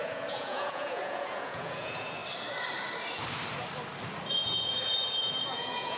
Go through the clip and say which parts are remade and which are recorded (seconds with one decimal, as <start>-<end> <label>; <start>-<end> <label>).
0.0-2.2 remade; 2.2-4.3 recorded; 4.3-6.0 remade